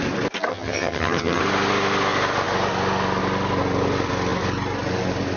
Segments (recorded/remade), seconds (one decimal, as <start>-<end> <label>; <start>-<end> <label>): 0.0-0.5 recorded; 0.5-1.4 remade; 1.4-5.4 recorded